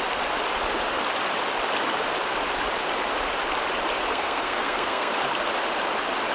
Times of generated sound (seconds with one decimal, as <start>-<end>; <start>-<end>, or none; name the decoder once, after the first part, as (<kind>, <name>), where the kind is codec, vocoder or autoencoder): 4.0-5.1 (codec, SNAC)